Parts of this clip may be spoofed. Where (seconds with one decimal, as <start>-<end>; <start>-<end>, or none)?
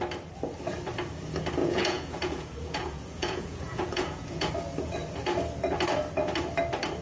1.6-4.5